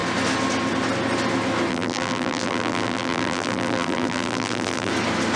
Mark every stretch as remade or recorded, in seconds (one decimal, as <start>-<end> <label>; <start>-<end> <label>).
0.0-1.7 recorded; 1.7-4.9 remade; 4.9-5.4 recorded